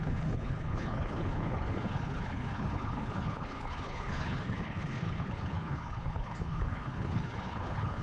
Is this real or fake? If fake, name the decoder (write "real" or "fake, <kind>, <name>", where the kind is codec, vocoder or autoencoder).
fake, codec, HILCodec